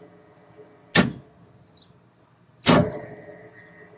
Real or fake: real